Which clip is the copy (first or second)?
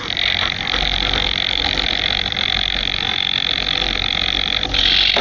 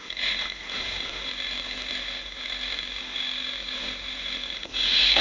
second